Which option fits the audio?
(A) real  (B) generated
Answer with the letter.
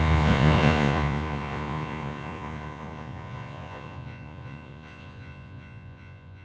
B